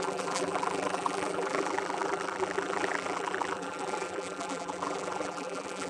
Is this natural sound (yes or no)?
no